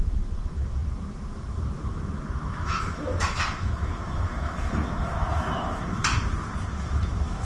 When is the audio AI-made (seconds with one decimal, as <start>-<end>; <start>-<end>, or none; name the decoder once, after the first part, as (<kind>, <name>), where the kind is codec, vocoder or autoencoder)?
0.0-6.0 (autoencoder, DAC-VAE); 6.7-7.4